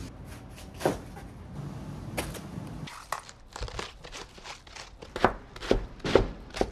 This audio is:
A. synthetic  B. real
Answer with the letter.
B